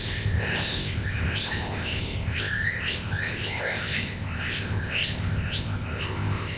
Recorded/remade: remade